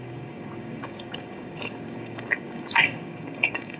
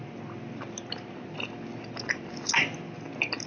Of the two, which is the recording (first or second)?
second